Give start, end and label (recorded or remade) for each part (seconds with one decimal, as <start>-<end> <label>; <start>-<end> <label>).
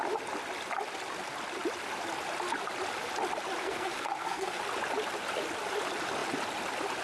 0.0-3.6 recorded; 3.6-4.6 remade; 4.6-7.0 recorded